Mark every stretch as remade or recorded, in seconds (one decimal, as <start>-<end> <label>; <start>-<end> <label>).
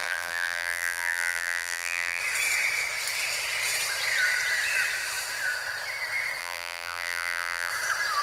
0.0-2.2 remade; 2.2-6.4 recorded; 6.4-7.7 remade; 7.7-8.2 recorded